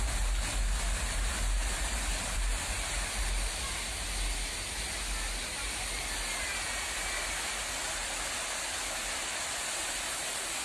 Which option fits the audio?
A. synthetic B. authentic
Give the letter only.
B